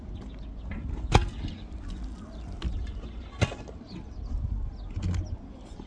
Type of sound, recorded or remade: recorded